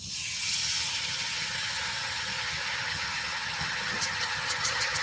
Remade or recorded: remade